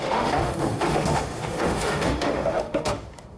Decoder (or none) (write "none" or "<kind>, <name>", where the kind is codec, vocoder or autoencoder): autoencoder, DAC-VAE